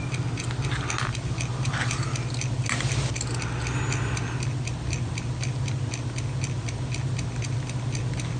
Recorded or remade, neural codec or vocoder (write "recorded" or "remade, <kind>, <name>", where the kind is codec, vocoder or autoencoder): recorded